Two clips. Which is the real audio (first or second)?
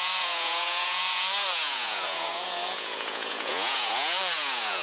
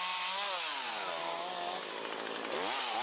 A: second